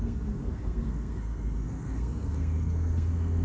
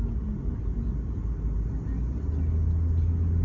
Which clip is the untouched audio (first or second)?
second